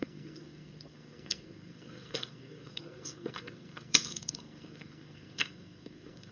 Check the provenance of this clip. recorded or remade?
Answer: remade